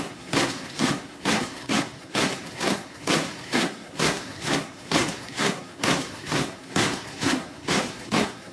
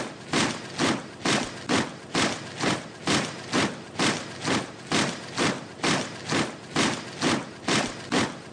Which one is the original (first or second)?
second